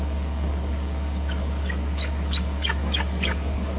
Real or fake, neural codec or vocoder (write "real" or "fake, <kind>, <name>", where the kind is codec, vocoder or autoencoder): fake, codec, DAC